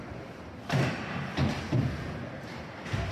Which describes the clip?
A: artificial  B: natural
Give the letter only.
B